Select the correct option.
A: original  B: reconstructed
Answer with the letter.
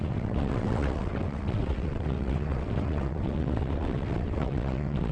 B